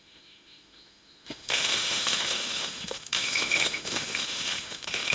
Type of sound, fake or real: fake